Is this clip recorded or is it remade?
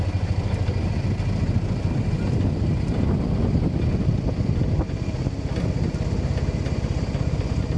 recorded